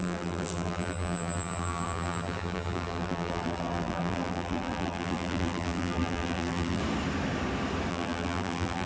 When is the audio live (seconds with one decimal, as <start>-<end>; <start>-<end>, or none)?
6.8-7.9